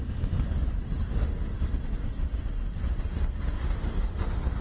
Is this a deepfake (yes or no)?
no